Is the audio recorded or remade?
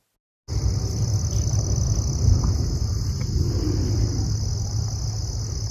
recorded